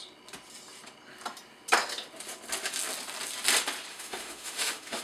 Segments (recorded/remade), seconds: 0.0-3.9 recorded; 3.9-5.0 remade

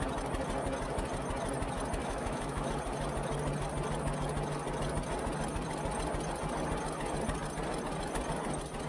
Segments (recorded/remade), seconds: 0.0-2.0 recorded; 2.0-2.7 remade; 2.7-8.9 recorded

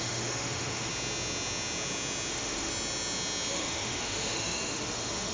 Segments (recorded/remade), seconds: 0.0-0.9 remade; 0.9-2.3 recorded; 2.3-2.7 remade; 2.7-3.5 recorded; 3.5-5.3 remade

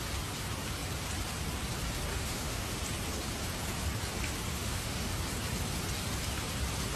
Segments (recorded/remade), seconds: 0.0-2.1 recorded; 2.1-2.8 remade; 2.8-4.5 recorded; 4.5-5.1 remade; 5.1-7.0 recorded

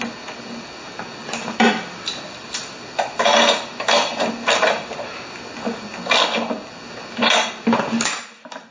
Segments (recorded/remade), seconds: 0.0-8.7 recorded

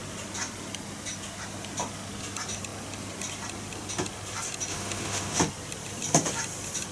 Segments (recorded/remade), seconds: 0.0-4.7 recorded; 4.7-5.4 remade; 5.4-6.9 recorded

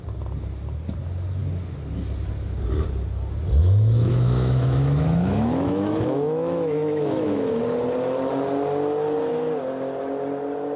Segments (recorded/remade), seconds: 0.0-3.6 recorded; 3.6-7.5 remade; 7.5-10.8 recorded

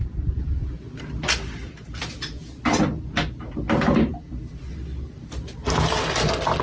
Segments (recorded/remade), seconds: 0.0-6.6 recorded